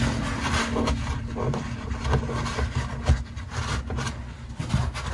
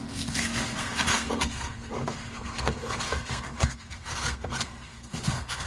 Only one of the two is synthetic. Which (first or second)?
second